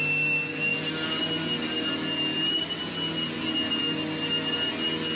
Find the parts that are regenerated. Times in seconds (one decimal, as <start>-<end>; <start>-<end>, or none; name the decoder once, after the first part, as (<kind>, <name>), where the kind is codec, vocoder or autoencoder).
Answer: none